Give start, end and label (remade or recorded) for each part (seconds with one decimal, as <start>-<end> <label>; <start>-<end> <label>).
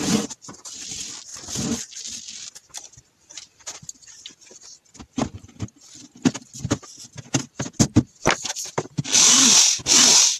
0.0-10.4 recorded